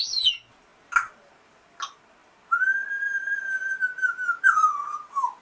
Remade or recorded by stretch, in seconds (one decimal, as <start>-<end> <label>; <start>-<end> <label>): 0.0-5.4 recorded